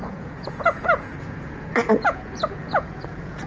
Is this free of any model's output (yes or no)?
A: no